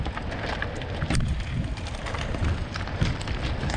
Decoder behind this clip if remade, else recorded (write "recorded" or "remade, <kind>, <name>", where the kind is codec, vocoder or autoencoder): recorded